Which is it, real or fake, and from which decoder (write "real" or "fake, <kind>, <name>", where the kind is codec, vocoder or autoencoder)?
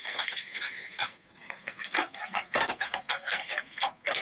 fake, codec, SNAC